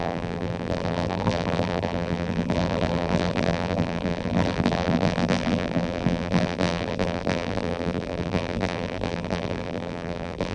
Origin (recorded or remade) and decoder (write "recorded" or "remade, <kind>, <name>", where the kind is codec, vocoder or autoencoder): remade, vocoder, BigVGAN v2